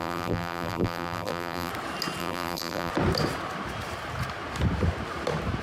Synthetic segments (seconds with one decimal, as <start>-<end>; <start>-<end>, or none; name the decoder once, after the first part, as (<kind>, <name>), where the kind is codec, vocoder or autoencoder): 0.0-1.7 (vocoder, BigVGAN v2); 2.2-2.9